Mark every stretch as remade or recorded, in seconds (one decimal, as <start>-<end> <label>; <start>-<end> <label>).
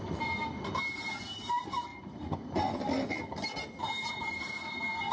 0.0-5.1 recorded